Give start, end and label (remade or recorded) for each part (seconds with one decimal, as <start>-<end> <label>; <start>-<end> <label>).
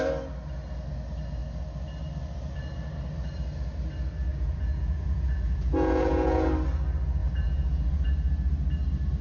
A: 0.0-4.3 recorded; 4.3-6.5 remade; 6.5-7.2 recorded; 7.2-8.1 remade; 8.1-9.2 recorded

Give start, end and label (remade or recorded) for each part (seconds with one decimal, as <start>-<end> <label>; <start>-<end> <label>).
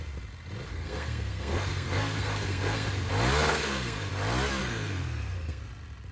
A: 0.0-0.7 recorded; 0.7-3.1 remade; 3.1-3.5 recorded; 3.5-4.1 remade; 4.1-4.6 recorded; 4.6-5.6 remade; 5.6-6.1 recorded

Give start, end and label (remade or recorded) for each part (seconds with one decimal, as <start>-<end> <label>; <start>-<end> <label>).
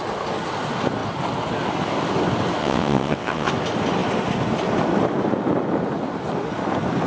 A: 0.0-2.6 recorded; 2.6-3.5 remade; 3.5-7.1 recorded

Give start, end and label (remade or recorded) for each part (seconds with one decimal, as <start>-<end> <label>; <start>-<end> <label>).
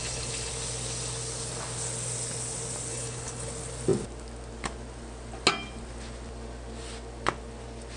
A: 0.0-0.5 remade; 0.5-2.9 recorded; 2.9-3.5 remade; 3.5-8.0 recorded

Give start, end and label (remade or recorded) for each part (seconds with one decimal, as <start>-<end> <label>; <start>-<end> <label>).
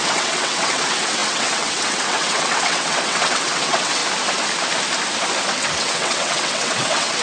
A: 0.0-4.0 remade; 4.0-5.5 recorded; 5.5-7.2 remade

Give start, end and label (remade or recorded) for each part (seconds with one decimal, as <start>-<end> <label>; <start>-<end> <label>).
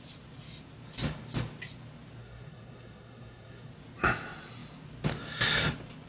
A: 0.0-2.2 recorded; 2.2-3.7 remade; 3.7-6.1 recorded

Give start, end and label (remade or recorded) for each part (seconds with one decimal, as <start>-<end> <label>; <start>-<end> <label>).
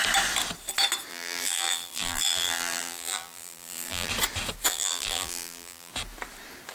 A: 0.0-1.1 recorded; 1.1-4.1 remade; 4.1-4.7 recorded; 4.7-5.9 remade; 5.9-6.7 recorded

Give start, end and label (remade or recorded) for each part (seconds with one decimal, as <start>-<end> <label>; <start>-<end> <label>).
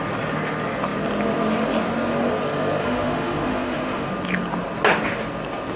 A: 0.0-2.8 recorded; 2.8-4.1 remade; 4.1-5.8 recorded